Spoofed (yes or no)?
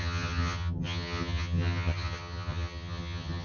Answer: yes